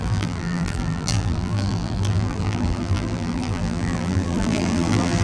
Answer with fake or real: fake